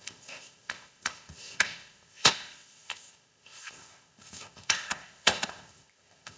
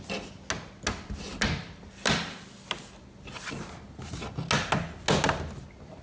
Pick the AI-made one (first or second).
first